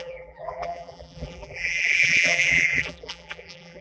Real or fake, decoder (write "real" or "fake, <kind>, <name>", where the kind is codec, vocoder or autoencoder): fake, vocoder, BigVGAN v2